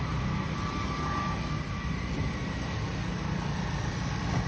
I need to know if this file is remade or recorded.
recorded